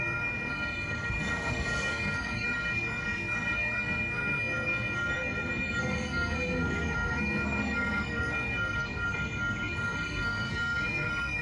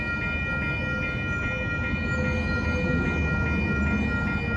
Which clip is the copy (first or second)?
first